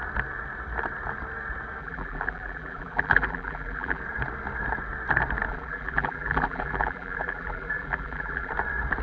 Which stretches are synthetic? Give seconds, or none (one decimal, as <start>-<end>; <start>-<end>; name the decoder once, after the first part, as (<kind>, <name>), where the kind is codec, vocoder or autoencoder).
1.8-4.0 (vocoder, BigVGAN v2); 5.5-8.5